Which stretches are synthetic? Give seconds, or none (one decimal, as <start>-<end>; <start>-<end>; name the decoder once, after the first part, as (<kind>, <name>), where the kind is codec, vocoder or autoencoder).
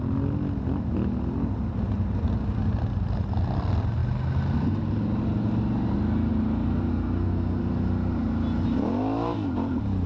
6.9-7.6 (codec, SNAC)